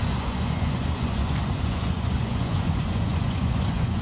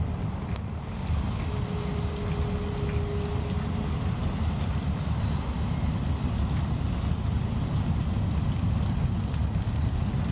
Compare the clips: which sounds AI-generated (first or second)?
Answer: first